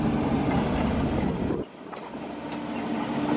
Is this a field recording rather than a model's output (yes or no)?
yes